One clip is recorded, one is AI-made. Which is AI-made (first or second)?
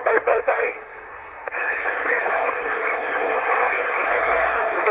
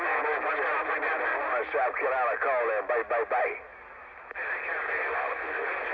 first